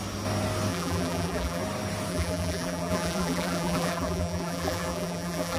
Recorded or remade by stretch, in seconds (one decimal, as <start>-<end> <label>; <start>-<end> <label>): 0.0-0.7 recorded; 0.7-1.6 remade; 1.6-2.1 recorded; 2.1-5.6 remade